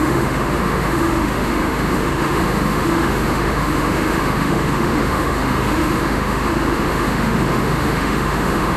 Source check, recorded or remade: remade